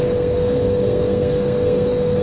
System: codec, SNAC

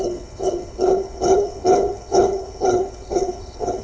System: codec, HILCodec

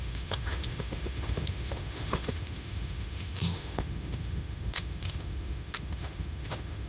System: autoencoder, DAC-VAE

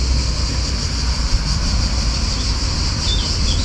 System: none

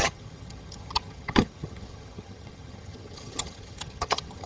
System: vocoder, HiFi-GAN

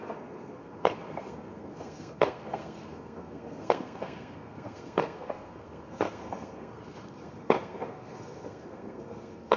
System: codec, SNAC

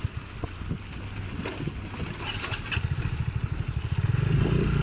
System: none